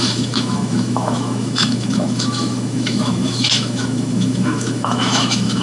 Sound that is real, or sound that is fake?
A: fake